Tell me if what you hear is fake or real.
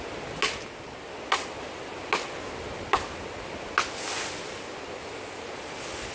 real